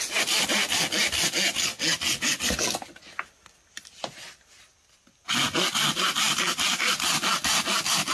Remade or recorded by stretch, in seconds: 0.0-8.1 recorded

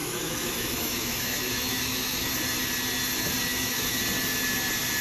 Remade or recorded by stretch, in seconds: 0.0-2.3 remade; 2.3-3.5 recorded; 3.5-4.0 remade; 4.0-5.0 recorded

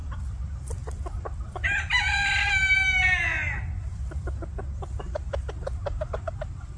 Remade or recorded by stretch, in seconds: 0.0-6.8 recorded

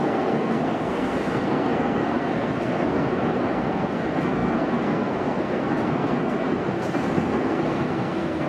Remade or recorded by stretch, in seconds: 0.0-8.5 remade

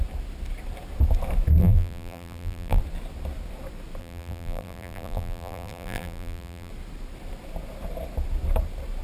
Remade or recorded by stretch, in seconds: 0.0-1.6 recorded; 1.6-2.8 remade; 2.8-4.0 recorded; 4.0-6.7 remade; 6.7-9.0 recorded

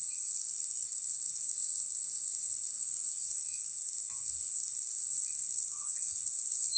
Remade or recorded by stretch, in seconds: 0.0-6.8 remade